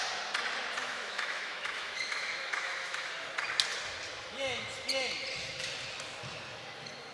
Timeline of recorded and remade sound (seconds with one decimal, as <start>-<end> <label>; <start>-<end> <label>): 0.0-0.8 recorded; 0.8-3.1 remade; 3.1-7.1 recorded